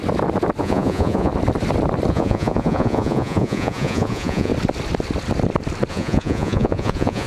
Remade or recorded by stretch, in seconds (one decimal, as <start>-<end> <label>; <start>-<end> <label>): 0.0-0.6 recorded; 0.6-1.3 remade; 1.3-2.1 recorded; 2.1-4.5 remade; 4.5-5.9 recorded; 5.9-7.3 remade